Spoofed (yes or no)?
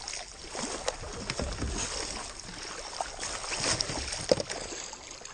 no